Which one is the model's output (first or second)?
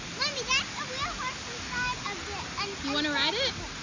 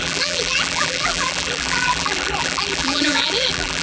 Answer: second